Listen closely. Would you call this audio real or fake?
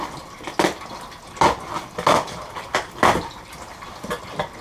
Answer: real